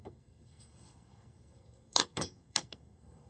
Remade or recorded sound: remade